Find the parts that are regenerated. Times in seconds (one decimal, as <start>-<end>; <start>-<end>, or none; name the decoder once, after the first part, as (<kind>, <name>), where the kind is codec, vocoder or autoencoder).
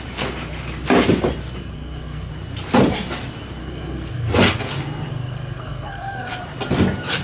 1.6-2.3 (codec, SNAC); 3.6-4.3; 5.1-6.3